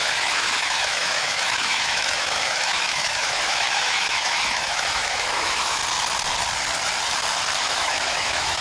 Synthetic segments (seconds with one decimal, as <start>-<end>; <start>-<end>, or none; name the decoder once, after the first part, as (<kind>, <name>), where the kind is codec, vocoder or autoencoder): 0.0-5.8 (autoencoder, DAC-VAE); 7.6-8.6